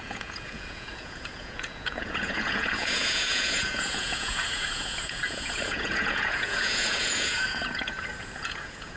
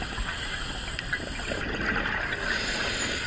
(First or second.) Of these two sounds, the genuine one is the second